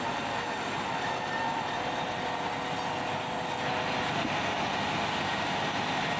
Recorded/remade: recorded